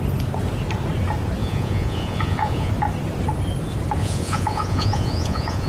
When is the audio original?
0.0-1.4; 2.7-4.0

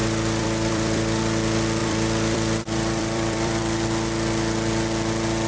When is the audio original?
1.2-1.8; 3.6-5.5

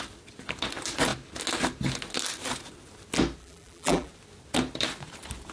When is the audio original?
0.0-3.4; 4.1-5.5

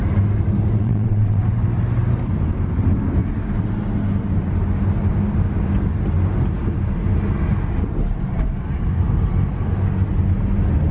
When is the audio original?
0.0-0.8; 1.4-10.9